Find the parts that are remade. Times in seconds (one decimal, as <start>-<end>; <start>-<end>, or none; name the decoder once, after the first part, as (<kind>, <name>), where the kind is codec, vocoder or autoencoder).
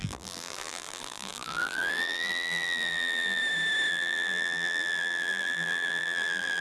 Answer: 0.0-3.4 (vocoder, BigVGAN v2); 3.9-6.6